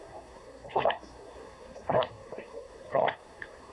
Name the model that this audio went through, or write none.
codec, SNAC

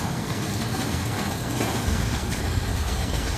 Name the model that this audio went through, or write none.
codec, SNAC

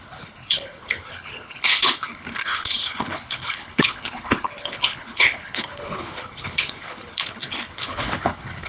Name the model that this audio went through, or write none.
codec, HILCodec